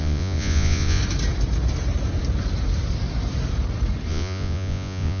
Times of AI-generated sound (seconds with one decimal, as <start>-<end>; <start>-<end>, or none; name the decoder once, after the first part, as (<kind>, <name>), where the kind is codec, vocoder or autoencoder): 0.0-1.0 (vocoder, Vocos); 4.1-5.2